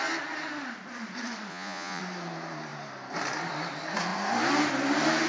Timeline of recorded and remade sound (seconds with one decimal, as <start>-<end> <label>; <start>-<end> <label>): 0.0-1.5 recorded; 1.5-2.0 remade; 2.0-5.3 recorded